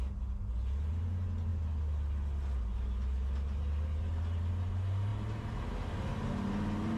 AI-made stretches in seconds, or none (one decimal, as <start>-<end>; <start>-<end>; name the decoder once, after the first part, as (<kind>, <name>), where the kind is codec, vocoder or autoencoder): none